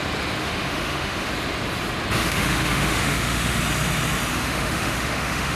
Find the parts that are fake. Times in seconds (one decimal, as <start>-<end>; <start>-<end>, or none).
0.4-1.3; 2.2-3.6; 4.3-5.6